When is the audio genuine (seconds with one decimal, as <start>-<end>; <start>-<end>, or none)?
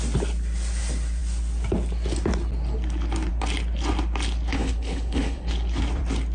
0.0-4.5; 5.5-6.3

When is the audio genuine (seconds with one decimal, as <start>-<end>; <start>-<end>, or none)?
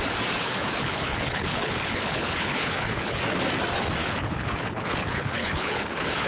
0.0-0.4; 3.2-4.0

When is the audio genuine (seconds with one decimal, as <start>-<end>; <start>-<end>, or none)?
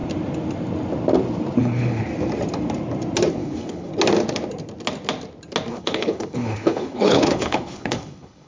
0.0-1.6; 2.1-3.3; 3.9-5.7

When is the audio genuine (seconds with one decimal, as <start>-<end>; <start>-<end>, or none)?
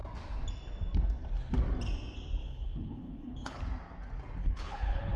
0.0-2.4; 3.6-4.4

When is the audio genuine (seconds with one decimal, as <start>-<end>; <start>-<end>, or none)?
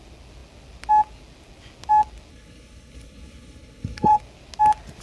0.0-2.3; 4.2-5.0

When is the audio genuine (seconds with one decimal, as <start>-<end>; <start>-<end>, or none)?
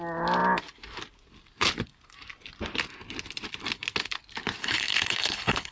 0.0-4.6